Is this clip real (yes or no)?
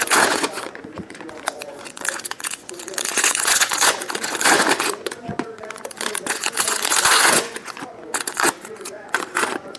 no